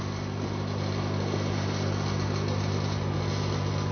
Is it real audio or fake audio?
real